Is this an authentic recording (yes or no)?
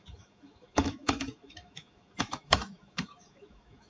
no